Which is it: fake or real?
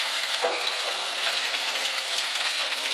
fake